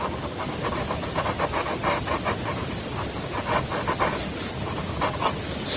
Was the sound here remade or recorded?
recorded